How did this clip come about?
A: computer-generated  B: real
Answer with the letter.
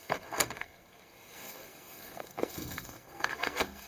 A